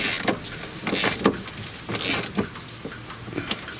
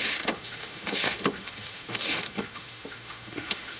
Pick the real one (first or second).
first